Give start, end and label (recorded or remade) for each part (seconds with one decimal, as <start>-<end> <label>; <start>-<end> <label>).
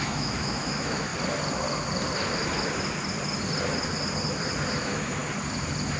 0.0-1.1 remade; 1.1-4.7 recorded; 4.7-5.2 remade; 5.2-6.0 recorded